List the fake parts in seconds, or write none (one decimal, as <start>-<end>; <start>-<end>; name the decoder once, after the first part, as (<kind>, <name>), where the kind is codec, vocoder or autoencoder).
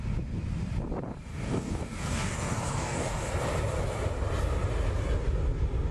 1.3-3.3 (codec, DAC)